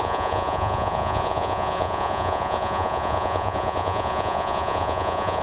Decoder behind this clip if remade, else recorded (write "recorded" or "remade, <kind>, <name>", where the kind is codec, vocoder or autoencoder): remade, vocoder, Vocos